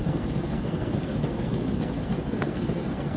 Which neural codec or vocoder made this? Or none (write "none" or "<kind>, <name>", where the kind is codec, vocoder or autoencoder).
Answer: codec, SNAC